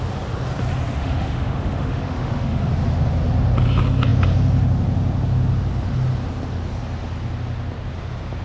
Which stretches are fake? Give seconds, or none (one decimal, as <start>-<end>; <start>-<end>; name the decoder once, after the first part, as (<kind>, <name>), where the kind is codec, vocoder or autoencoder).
1.0-2.7 (autoencoder, DAC-VAE)